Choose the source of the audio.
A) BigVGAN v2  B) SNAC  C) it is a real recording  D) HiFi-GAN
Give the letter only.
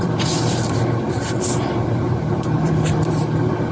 A